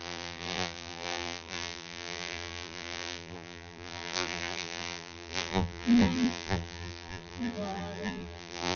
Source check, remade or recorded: remade